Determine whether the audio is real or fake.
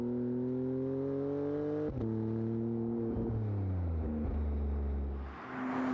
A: real